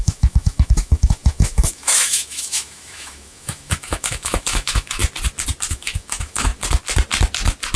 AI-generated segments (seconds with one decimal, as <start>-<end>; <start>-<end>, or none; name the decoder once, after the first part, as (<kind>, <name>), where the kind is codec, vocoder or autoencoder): 0.0-5.0 (autoencoder, DAC-VAE); 5.7-6.5